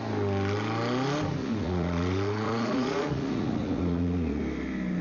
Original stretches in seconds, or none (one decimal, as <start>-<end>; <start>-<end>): 0.0-1.4; 4.4-5.0